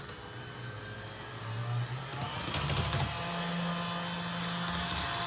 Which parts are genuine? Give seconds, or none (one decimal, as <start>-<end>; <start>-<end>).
0.0-2.1; 3.7-5.3